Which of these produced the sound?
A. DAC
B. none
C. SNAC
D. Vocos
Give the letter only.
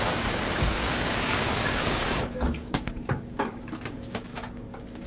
A